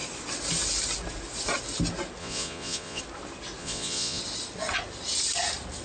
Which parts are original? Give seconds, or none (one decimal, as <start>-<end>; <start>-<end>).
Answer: 0.0-2.2; 3.0-3.6; 4.2-5.8

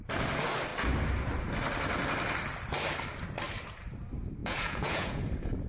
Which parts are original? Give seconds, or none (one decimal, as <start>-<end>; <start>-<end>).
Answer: 0.0-4.4; 5.2-5.7

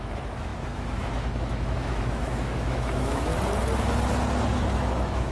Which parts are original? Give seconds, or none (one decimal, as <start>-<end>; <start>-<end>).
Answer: 3.3-4.7

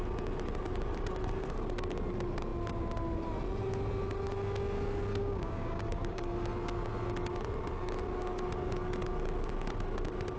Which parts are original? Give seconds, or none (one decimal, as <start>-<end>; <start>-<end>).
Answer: 0.0-5.2; 6.3-10.4

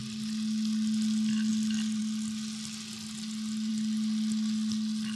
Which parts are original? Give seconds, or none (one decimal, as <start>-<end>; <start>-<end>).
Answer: 0.0-5.2

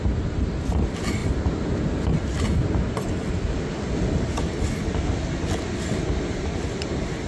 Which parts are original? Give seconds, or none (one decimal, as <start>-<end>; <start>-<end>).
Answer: 0.0-7.3

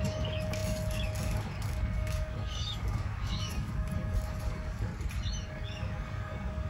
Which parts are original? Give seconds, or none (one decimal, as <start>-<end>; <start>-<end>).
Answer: 4.9-5.5